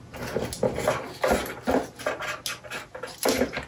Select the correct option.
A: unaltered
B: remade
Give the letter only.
A